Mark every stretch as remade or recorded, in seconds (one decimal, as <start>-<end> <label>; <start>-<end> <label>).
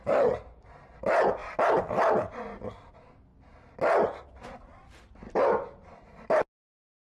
0.0-7.1 recorded